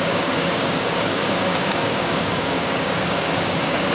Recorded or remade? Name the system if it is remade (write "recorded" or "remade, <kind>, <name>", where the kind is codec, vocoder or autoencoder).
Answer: remade, codec, DAC